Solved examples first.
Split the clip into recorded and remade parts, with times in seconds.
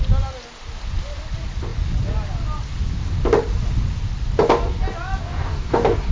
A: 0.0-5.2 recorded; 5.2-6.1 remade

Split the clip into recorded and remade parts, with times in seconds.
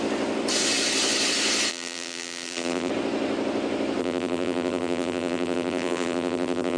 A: 0.0-1.7 recorded; 1.7-2.9 remade; 2.9-4.0 recorded; 4.0-6.8 remade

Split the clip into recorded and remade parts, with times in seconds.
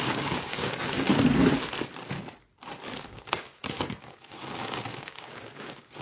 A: 0.0-1.1 remade; 1.1-3.1 recorded; 3.1-6.0 remade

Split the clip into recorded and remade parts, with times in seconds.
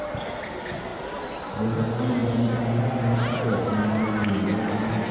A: 0.0-5.1 recorded